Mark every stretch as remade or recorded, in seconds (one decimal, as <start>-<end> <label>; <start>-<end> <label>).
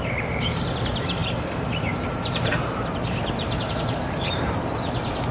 0.0-5.3 remade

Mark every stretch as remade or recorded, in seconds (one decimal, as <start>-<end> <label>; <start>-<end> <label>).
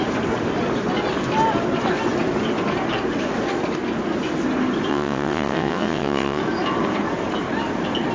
0.0-4.9 recorded; 4.9-6.4 remade; 6.4-8.1 recorded